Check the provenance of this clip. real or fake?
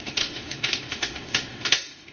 fake